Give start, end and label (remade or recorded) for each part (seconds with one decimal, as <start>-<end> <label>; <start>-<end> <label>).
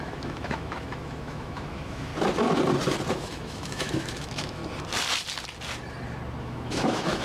0.0-2.1 remade; 2.1-3.1 recorded; 3.1-4.6 remade; 4.6-6.4 recorded; 6.4-7.2 remade